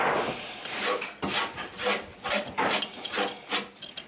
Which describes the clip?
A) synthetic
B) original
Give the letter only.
B